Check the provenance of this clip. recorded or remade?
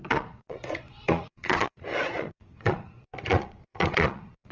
remade